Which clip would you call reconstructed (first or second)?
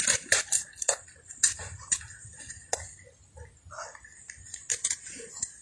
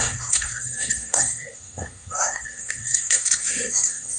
second